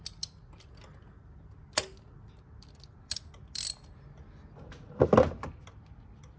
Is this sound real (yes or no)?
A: yes